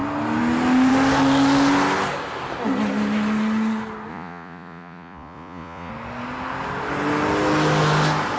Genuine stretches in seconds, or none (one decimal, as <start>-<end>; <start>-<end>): 0.0-4.1; 5.9-8.4